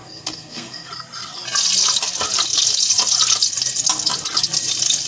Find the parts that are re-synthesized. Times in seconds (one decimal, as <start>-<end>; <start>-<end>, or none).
0.0-0.9